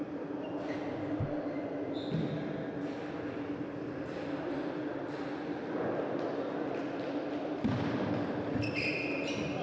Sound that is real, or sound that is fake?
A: real